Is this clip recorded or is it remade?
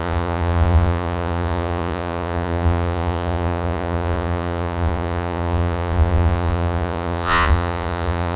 remade